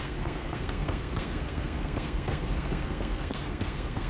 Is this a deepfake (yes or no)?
yes